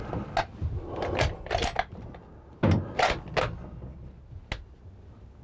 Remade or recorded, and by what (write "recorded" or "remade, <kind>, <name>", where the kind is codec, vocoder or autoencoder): recorded